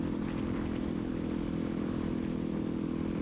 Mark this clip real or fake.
real